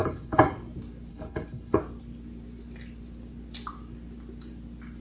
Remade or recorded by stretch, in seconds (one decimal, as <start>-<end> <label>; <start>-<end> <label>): 0.0-0.5 remade; 0.5-1.1 recorded; 1.1-1.8 remade; 1.8-5.0 recorded